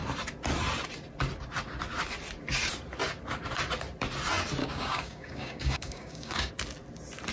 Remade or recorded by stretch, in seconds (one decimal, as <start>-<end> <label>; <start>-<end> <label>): 0.0-4.6 recorded; 4.6-6.5 remade; 6.5-7.3 recorded

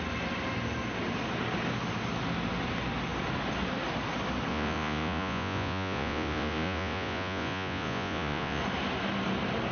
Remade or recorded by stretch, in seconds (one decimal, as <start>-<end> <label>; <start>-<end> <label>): 0.0-4.5 recorded; 4.5-8.6 remade; 8.6-9.7 recorded